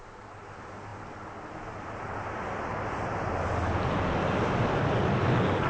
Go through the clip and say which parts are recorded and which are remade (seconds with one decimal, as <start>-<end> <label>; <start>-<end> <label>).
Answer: 0.0-5.7 recorded